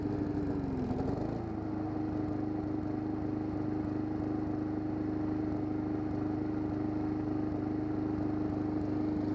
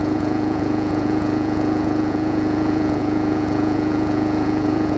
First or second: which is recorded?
first